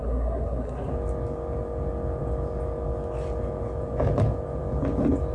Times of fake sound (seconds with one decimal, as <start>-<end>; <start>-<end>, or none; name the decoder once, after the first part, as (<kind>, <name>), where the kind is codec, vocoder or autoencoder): 0.0-0.9 (codec, SNAC)